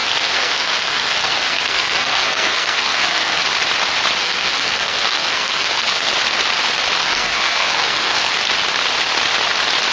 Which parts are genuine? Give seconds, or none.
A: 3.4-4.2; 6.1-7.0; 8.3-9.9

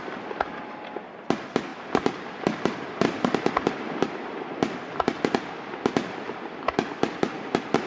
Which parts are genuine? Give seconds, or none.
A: 0.0-7.9

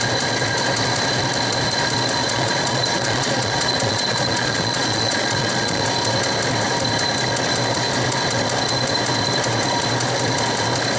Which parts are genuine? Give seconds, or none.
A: 0.0-2.2; 5.8-11.0

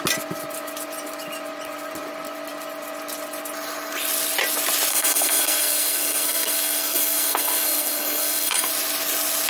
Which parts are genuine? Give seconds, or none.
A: 0.0-4.9; 8.7-9.5

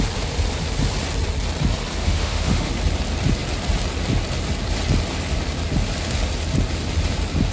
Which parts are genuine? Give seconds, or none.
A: 0.0-2.0; 2.7-7.5